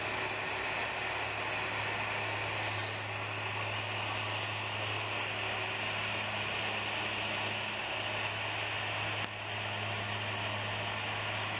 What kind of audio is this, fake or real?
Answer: real